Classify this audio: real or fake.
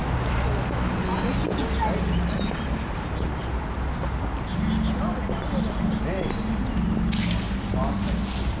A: real